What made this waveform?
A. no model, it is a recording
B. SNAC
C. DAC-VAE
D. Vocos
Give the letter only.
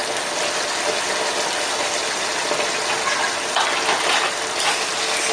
A